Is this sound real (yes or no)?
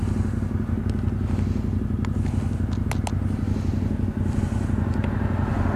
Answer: yes